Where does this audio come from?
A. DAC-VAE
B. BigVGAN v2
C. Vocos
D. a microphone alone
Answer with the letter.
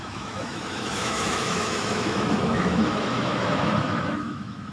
A